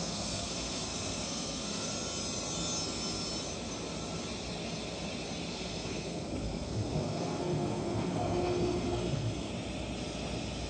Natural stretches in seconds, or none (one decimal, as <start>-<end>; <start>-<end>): 1.9-5.5; 9.5-10.7

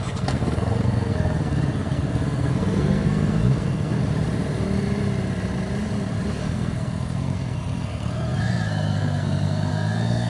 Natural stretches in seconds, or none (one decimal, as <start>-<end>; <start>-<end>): 4.0-6.4

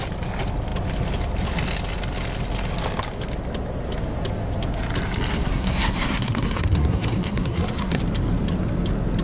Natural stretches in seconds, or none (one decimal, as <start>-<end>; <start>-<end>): 0.0-5.3; 8.0-9.2

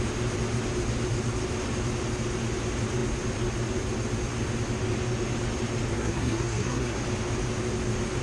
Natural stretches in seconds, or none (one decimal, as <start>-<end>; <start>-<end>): 0.0-5.9; 7.0-8.2